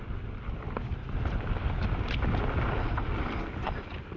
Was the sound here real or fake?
real